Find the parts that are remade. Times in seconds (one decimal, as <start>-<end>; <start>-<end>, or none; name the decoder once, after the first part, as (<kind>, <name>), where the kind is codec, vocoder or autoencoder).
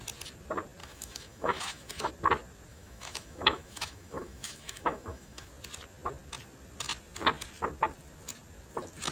0.8-2.1 (autoencoder, DAC-VAE); 2.7-5.5